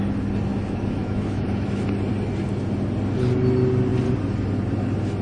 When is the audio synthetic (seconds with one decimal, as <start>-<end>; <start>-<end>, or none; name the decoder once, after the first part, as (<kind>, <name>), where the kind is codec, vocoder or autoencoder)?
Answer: 0.5-1.8 (autoencoder, DAC-VAE)